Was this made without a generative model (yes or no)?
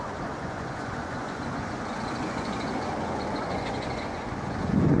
no